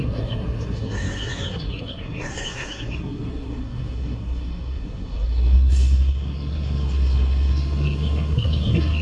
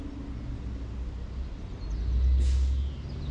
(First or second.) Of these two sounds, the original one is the second